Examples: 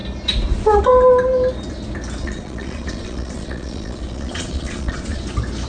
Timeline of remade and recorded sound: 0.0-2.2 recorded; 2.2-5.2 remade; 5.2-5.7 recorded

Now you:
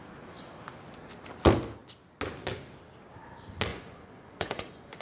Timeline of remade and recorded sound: 0.0-3.7 recorded; 3.7-5.0 remade